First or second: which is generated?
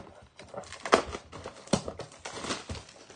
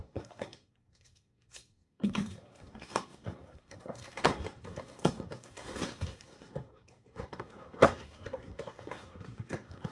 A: second